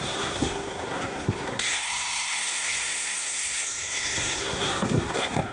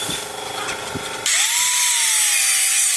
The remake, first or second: first